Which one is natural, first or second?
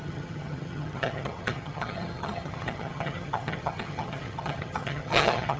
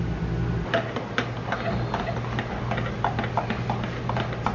second